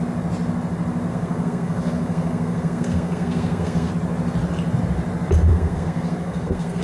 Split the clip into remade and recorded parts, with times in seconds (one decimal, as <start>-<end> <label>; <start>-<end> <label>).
0.0-1.1 recorded; 1.1-3.9 remade; 3.9-5.5 recorded; 5.5-6.8 remade

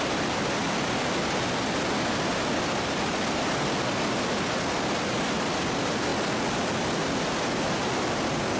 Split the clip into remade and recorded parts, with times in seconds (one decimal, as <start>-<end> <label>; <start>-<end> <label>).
0.0-8.6 recorded

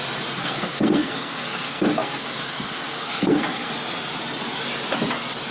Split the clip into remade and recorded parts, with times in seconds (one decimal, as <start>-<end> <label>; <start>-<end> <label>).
0.0-0.4 recorded; 0.4-3.7 remade; 3.7-5.5 recorded

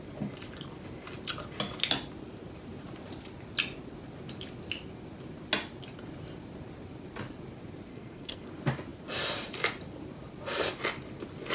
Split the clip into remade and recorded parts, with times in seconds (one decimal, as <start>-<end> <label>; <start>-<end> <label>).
0.0-7.9 recorded; 7.9-8.5 remade; 8.5-11.5 recorded